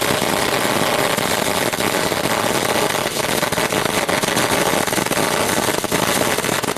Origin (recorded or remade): recorded